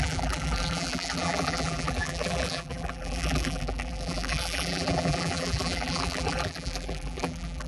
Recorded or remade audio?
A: remade